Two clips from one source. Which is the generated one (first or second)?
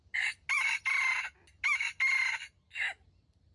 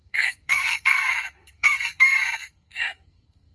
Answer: second